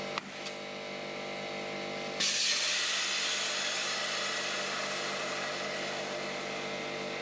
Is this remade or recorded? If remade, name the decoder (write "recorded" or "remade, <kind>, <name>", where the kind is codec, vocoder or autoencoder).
recorded